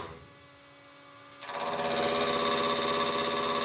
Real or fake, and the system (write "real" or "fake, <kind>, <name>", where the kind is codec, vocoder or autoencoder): real